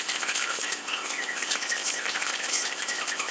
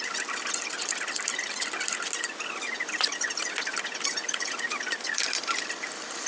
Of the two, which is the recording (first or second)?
second